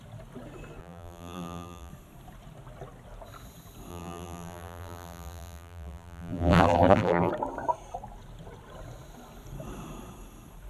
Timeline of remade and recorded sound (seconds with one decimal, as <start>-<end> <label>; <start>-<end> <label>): 0.0-0.8 recorded; 0.8-1.9 remade; 1.9-3.9 recorded; 3.9-7.3 remade; 7.3-10.7 recorded